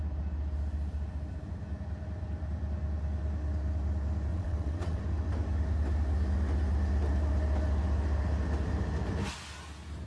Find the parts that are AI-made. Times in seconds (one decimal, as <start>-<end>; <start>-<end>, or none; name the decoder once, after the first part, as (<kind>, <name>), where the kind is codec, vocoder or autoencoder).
4.3-5.0 (vocoder, WaveNeXt)